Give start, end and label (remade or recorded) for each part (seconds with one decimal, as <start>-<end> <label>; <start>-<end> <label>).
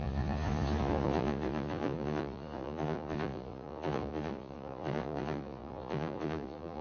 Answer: 0.0-6.8 remade